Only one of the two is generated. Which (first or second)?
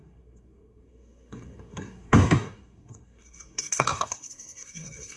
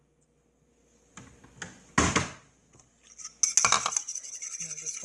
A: first